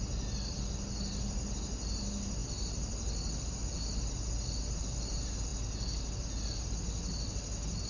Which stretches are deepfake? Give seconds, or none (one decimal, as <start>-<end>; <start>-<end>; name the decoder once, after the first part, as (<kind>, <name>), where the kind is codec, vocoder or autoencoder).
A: none